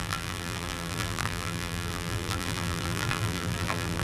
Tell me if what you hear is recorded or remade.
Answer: remade